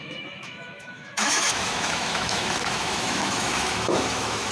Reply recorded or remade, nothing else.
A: remade